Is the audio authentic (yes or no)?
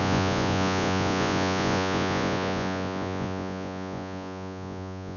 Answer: no